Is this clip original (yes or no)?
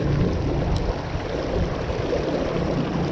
yes